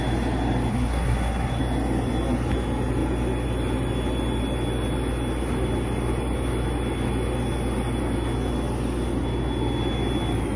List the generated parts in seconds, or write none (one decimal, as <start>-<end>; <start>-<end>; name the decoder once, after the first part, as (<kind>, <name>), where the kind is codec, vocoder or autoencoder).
0.7-1.6 (codec, SNAC)